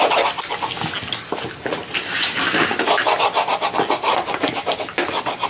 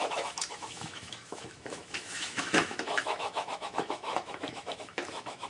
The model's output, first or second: second